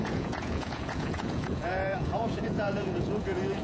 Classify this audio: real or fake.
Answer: fake